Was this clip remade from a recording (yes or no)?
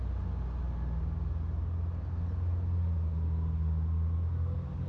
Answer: no